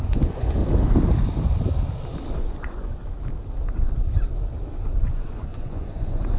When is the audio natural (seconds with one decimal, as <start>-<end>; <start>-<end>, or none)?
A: 0.6-2.3; 3.0-5.0